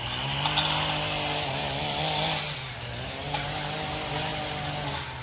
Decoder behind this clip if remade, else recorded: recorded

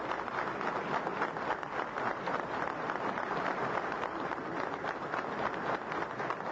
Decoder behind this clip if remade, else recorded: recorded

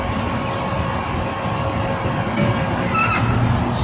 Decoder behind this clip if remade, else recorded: recorded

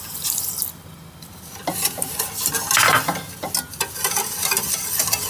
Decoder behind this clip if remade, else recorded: recorded